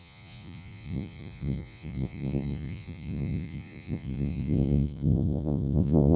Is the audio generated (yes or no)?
yes